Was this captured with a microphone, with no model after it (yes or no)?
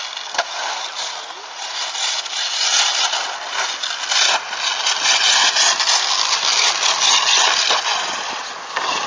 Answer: yes